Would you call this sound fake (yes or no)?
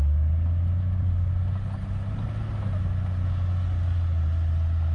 no